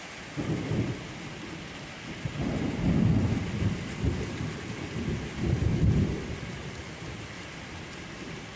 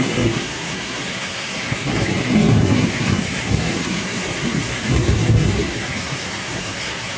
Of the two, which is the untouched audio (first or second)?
first